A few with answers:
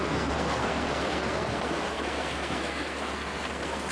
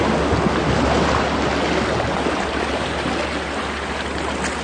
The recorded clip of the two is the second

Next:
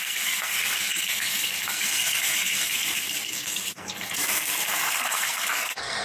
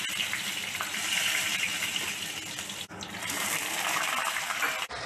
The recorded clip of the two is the second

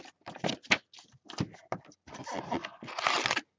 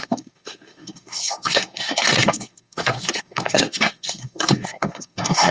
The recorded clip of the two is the first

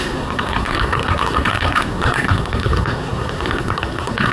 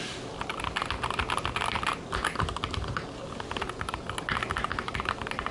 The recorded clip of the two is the second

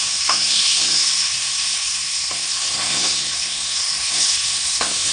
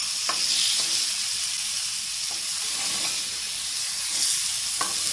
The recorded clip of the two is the second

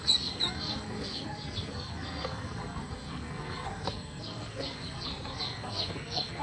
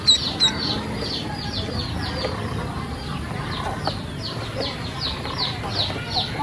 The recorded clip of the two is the second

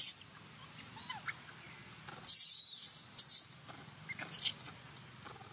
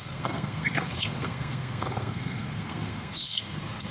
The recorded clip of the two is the first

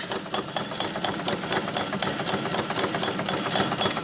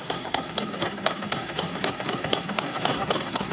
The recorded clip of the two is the first